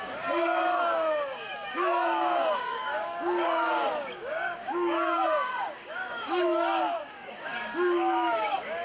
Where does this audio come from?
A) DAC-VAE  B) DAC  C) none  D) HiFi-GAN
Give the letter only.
B